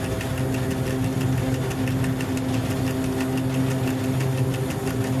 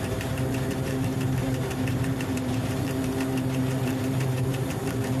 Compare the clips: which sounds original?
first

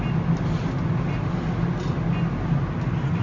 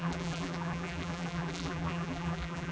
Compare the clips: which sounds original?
first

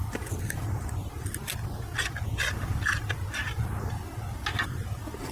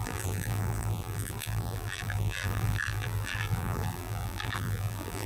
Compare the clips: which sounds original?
first